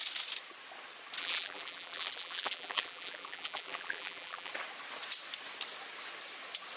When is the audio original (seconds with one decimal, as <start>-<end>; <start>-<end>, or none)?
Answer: 0.0-1.2; 4.5-6.8